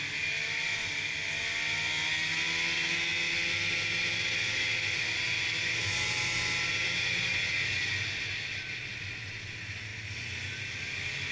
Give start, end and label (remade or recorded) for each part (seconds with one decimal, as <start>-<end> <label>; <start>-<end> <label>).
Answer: 0.0-11.3 recorded